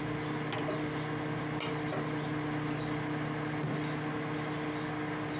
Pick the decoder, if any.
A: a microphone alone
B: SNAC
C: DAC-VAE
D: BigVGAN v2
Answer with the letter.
A